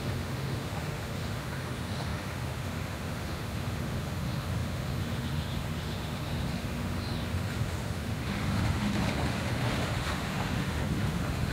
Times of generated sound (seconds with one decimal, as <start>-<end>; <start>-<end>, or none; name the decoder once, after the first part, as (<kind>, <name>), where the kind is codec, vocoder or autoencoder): 0.0-11.5 (autoencoder, DAC-VAE)